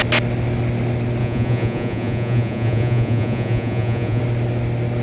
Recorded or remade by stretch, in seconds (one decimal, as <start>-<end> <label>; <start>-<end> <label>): 0.0-1.2 recorded; 1.2-4.2 remade; 4.2-5.0 recorded